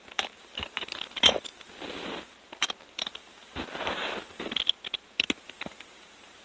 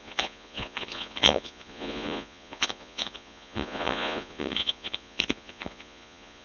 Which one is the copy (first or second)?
second